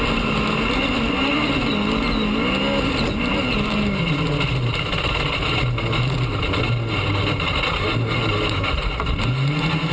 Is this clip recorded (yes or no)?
yes